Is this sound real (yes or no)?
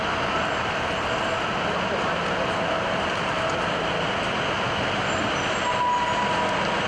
yes